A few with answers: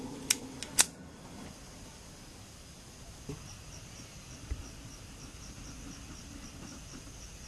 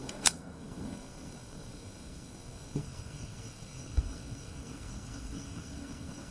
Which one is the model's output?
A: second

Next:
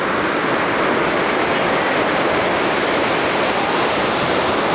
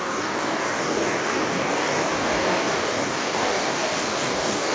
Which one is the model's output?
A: second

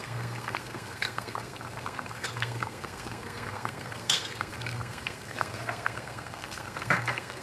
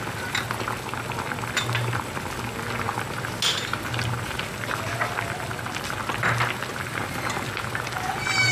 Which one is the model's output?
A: first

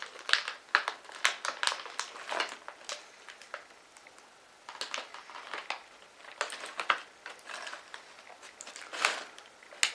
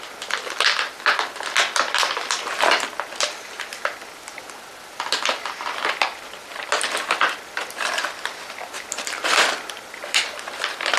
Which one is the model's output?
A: second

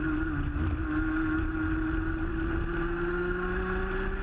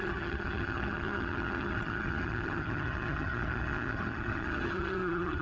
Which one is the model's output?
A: second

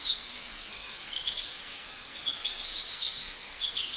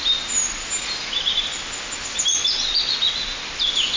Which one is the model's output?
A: first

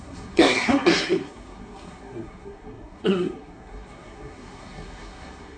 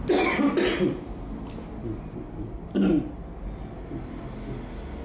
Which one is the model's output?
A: first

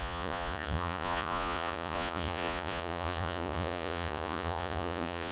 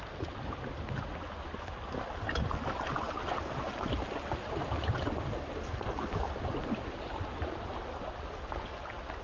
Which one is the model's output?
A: first